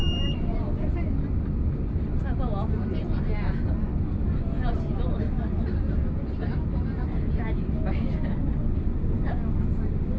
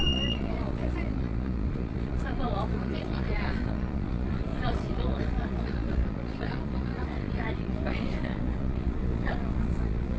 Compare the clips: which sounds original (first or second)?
first